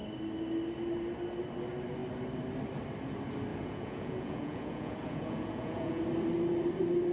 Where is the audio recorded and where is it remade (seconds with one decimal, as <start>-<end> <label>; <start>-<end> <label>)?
0.0-3.5 recorded; 3.5-6.0 remade; 6.0-7.1 recorded